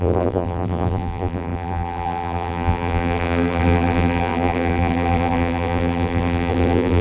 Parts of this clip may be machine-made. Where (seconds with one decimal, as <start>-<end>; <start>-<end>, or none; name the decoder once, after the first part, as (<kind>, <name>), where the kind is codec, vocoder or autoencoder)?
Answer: 0.0-7.0 (vocoder, BigVGAN v2)